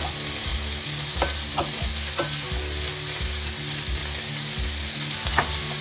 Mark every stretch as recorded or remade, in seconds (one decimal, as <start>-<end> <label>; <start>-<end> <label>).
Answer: 0.0-5.8 recorded